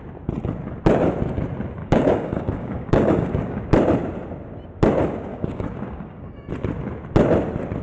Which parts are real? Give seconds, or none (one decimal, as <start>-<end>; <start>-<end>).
0.0-1.8; 3.6-5.3; 6.5-7.8